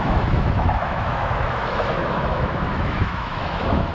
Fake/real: fake